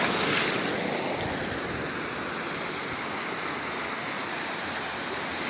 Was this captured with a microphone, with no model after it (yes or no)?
yes